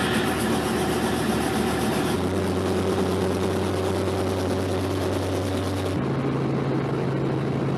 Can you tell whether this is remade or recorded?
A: recorded